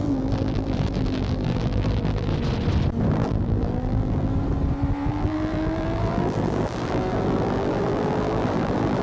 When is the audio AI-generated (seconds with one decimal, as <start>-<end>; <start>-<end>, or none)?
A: 0.0-2.3; 3.1-4.3; 5.1-9.0